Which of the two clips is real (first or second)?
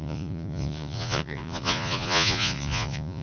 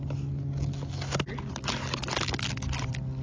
second